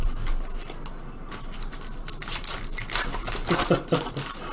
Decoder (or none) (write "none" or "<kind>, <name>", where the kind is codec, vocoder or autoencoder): none